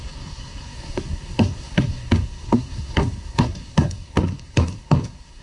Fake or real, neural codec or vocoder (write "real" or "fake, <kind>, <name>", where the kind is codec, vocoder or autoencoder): fake, codec, SNAC